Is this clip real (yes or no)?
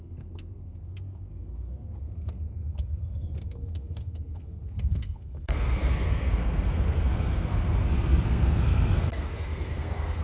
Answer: no